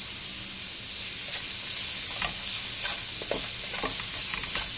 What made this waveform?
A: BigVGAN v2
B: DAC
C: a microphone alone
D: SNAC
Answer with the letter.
C